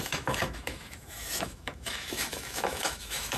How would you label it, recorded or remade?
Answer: remade